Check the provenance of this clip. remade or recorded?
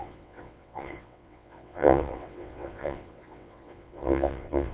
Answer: remade